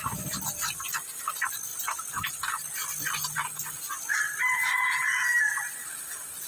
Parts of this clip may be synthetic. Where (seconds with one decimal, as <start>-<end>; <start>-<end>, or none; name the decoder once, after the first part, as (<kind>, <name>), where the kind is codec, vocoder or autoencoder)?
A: none

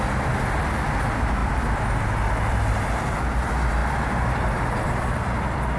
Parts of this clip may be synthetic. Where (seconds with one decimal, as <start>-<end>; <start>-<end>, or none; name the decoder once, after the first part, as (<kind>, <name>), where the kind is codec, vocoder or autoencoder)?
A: none

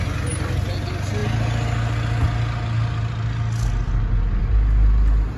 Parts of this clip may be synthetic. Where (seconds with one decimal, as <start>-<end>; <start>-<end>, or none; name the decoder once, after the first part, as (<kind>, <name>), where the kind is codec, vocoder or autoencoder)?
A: none